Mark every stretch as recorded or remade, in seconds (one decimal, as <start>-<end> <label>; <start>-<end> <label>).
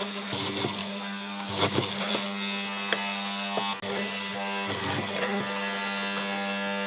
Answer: 0.0-0.8 recorded; 0.8-2.1 remade; 2.1-6.9 recorded